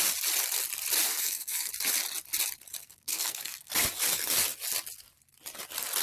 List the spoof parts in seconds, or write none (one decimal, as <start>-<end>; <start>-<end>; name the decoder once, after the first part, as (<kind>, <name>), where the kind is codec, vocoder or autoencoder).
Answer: 1.1-1.7 (codec, SNAC); 2.8-3.7